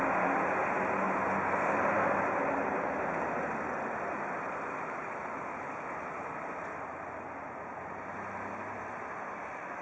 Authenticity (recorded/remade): recorded